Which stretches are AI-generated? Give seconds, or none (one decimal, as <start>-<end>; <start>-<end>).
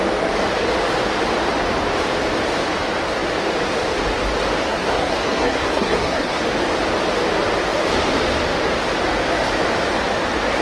4.6-6.4